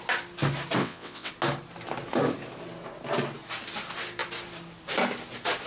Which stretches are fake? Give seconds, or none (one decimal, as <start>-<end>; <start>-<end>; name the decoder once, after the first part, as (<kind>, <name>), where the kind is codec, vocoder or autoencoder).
0.8-1.3 (vocoder, WaveNeXt)